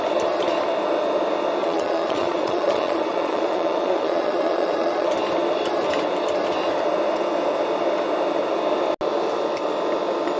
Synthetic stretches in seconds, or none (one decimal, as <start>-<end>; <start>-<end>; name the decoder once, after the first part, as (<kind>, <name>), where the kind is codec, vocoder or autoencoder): 1.6-5.1 (vocoder, Vocos)